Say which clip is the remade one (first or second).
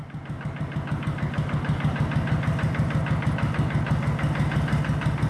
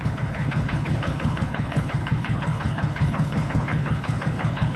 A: second